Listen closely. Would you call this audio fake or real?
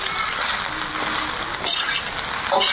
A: real